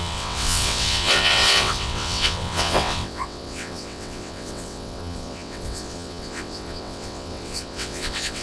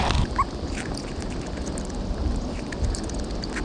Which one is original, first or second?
second